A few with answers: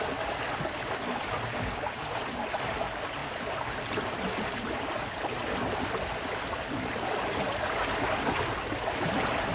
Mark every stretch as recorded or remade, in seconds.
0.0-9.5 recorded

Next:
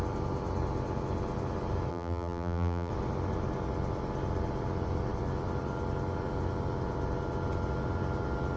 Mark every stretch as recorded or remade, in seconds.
0.0-1.9 recorded; 1.9-2.9 remade; 2.9-8.6 recorded

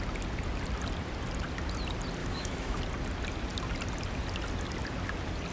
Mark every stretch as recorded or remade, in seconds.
0.0-2.2 recorded; 2.2-2.8 remade; 2.8-5.5 recorded